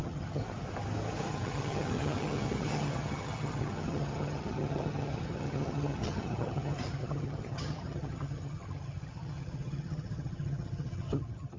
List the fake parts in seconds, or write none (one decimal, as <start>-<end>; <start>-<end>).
0.0-0.4; 1.3-11.6